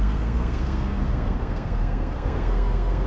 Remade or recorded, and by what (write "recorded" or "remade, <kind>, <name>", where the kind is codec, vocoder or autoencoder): remade, codec, SNAC